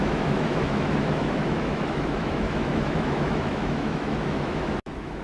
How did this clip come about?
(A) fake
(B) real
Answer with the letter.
A